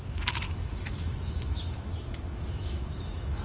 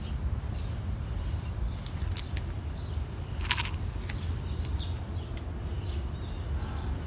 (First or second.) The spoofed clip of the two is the first